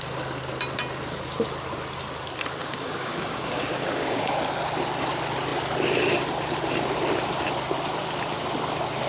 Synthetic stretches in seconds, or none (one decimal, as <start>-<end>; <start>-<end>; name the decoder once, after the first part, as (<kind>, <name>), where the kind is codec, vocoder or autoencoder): 2.6-4.2 (codec, DAC)